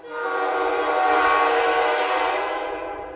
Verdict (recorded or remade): recorded